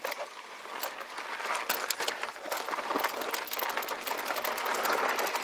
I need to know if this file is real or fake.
real